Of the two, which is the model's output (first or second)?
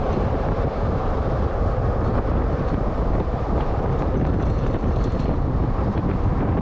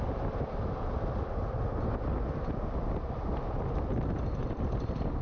first